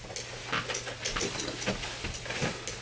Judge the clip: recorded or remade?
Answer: recorded